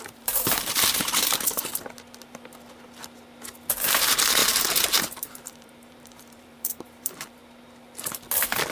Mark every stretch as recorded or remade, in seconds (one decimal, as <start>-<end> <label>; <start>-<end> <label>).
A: 0.0-1.7 remade; 1.7-3.9 recorded; 3.9-7.4 remade; 7.4-8.7 recorded